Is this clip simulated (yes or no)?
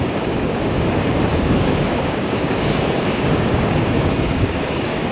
yes